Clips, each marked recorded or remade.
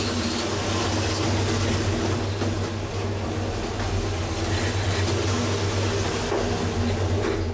recorded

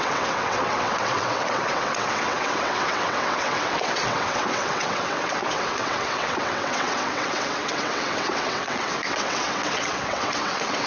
remade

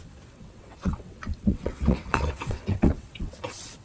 remade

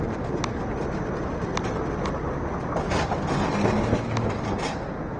recorded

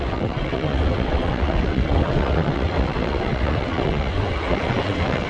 remade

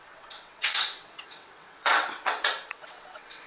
remade